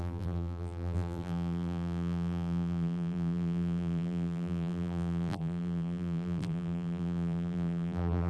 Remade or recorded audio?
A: remade